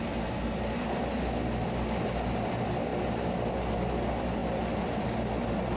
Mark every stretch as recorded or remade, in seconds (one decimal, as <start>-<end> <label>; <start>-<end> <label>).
0.0-5.8 recorded